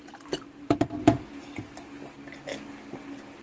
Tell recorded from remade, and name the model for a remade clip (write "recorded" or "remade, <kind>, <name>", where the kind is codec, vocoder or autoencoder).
recorded